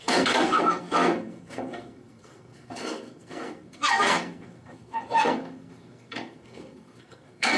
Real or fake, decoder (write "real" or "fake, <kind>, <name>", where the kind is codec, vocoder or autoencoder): fake, codec, SNAC